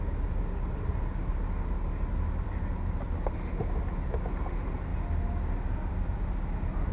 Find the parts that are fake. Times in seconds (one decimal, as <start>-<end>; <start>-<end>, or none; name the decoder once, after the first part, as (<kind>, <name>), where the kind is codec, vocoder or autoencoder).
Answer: none